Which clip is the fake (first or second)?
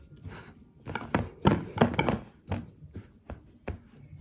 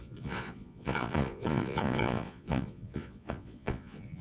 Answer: second